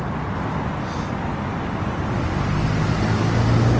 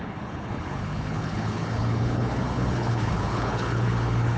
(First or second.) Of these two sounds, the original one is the first